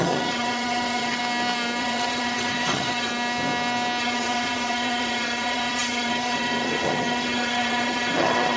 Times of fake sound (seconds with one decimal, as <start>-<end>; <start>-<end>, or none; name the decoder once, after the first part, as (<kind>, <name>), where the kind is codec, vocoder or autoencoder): 0.0-1.2 (vocoder, HiFi-GAN); 1.8-3.1; 4.0-8.6